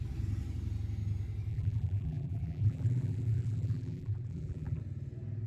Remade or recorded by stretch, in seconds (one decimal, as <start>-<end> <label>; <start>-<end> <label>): 0.0-1.5 recorded; 1.5-4.8 remade; 4.8-5.5 recorded